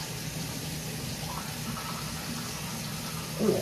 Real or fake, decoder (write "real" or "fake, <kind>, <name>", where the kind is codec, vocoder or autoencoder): real